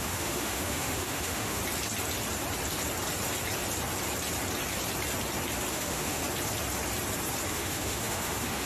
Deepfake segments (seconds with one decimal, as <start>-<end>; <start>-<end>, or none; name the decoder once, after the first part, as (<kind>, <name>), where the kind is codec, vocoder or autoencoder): 0.0-1.6 (autoencoder, DAC-VAE); 5.7-6.2; 7.5-8.7